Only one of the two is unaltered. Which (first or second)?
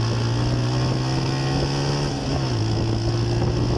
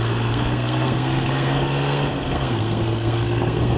first